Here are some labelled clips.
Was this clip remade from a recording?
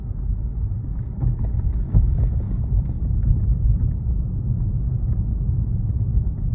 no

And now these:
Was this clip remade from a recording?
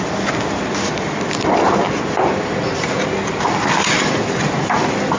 no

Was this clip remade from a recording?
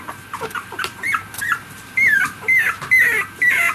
yes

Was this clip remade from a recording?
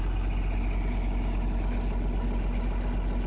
no